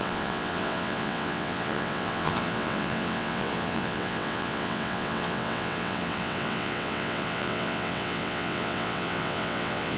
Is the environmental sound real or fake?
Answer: fake